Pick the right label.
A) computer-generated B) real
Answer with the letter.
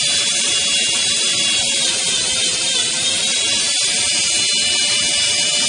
B